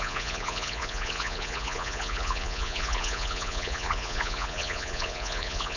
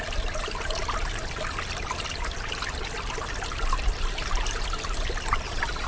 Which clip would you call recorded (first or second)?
second